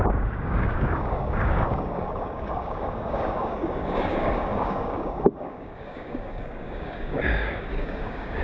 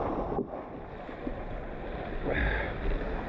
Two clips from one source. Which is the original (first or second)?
second